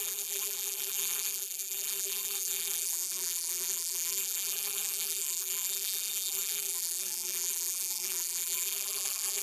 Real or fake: fake